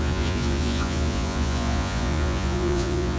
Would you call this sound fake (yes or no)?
yes